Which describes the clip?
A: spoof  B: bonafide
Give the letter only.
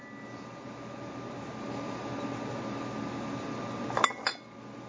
B